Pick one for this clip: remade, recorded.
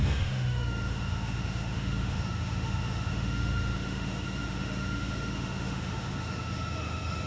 remade